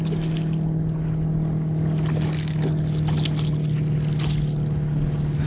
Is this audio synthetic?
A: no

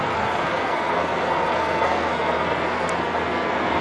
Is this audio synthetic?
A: yes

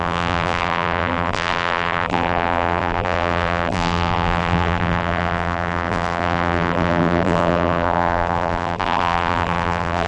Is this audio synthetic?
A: yes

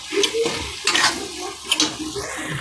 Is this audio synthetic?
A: no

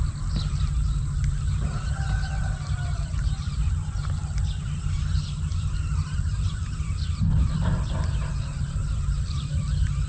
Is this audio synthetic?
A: no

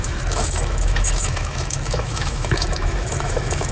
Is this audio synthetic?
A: yes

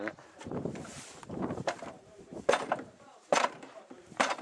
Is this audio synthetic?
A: yes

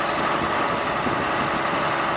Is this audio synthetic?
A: no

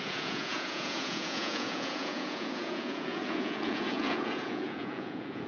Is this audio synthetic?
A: yes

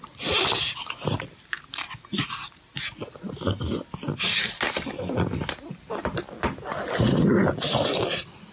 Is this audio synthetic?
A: no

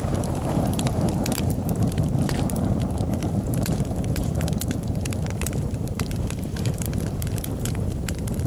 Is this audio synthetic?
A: yes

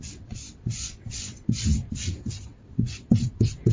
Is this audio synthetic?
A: yes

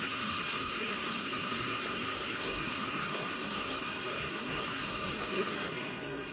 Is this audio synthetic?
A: yes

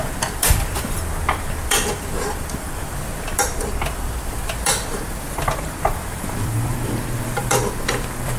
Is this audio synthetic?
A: yes